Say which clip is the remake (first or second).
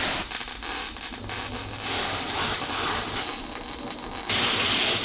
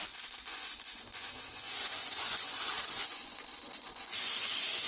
second